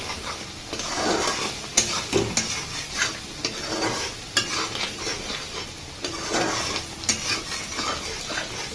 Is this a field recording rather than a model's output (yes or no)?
yes